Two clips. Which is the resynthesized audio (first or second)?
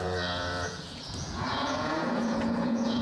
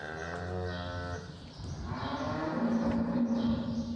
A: first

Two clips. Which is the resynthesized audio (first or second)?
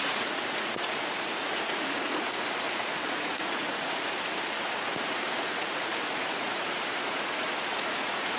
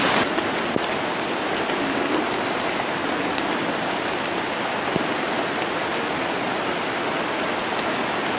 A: first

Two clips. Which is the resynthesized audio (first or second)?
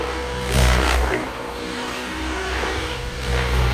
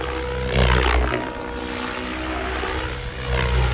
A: first